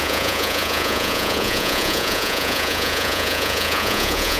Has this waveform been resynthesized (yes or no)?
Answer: yes